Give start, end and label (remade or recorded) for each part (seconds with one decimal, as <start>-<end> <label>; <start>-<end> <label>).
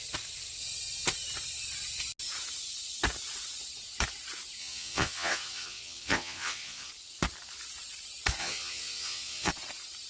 0.0-4.6 recorded; 4.6-6.9 remade; 6.9-8.4 recorded; 8.4-9.5 remade; 9.5-10.1 recorded